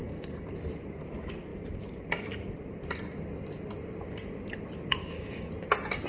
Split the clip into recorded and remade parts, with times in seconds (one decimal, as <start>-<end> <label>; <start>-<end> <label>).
0.0-0.5 remade; 0.5-5.0 recorded; 5.0-5.5 remade; 5.5-6.1 recorded